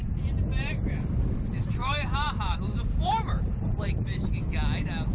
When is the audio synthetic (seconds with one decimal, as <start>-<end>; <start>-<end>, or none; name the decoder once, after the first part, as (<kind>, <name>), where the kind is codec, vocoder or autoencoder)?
1.8-4.3 (vocoder, BigVGAN v2)